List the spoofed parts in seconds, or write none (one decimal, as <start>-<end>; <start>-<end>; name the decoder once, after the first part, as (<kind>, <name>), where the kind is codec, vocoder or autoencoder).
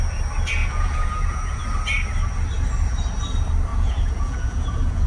0.6-1.6 (vocoder, Vocos); 3.7-5.1